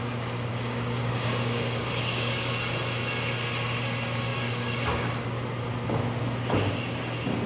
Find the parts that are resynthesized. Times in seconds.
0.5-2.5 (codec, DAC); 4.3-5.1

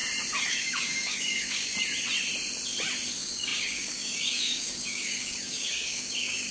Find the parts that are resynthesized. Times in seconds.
0.5-1.7 (codec, DAC); 3.1-6.5

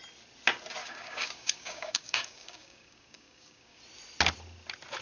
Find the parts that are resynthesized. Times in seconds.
0.8-3.8 (codec, DAC)

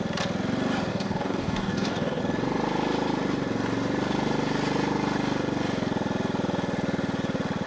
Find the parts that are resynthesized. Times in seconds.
0.9-2.2 (codec, DAC)

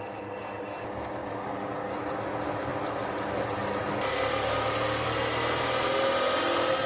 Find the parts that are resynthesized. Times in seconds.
1.2-2.0 (codec, DAC)

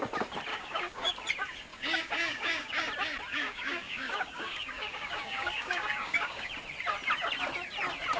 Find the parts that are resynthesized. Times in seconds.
0.5-1.1 (codec, DAC); 1.7-2.9; 3.3-6.5